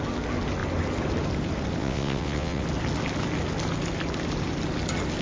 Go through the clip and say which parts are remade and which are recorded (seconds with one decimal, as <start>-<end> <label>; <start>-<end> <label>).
0.0-1.8 recorded; 1.8-2.6 remade; 2.6-5.2 recorded

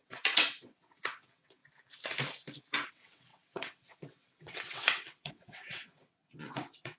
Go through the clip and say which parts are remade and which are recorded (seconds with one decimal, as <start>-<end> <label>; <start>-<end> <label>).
0.0-1.6 remade; 1.6-2.9 recorded; 2.9-7.0 remade

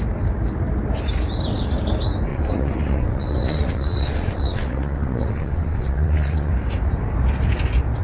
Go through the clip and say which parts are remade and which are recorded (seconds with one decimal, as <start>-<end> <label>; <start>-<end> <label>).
0.0-2.3 recorded; 2.3-6.5 remade; 6.5-8.0 recorded

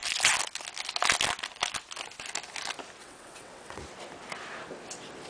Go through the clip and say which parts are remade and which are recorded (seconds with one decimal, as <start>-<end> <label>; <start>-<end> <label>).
0.0-3.0 recorded; 3.0-3.8 remade; 3.8-5.3 recorded

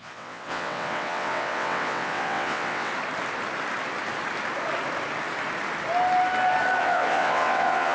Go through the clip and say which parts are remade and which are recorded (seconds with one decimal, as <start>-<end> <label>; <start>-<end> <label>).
0.0-2.9 remade; 2.9-6.8 recorded; 6.8-7.9 remade

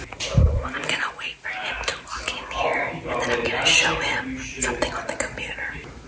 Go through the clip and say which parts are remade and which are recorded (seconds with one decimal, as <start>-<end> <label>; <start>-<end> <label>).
0.0-6.1 recorded